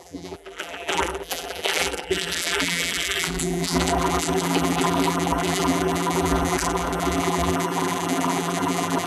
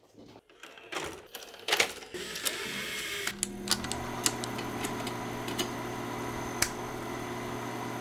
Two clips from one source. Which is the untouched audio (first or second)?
second